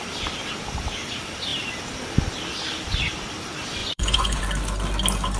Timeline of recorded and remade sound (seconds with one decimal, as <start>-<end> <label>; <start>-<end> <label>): 0.0-3.8 recorded; 3.8-4.4 remade; 4.4-5.4 recorded

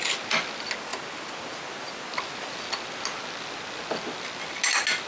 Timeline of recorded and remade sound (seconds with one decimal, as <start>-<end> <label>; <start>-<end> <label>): 0.0-5.1 recorded

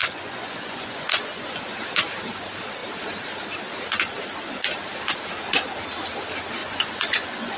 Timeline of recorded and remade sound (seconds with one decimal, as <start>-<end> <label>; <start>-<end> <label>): 0.0-1.6 remade; 1.6-6.6 recorded; 6.6-7.6 remade

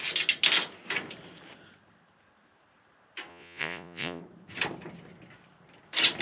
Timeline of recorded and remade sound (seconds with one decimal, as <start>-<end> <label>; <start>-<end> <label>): 0.0-3.3 recorded; 3.3-4.2 remade; 4.2-6.2 recorded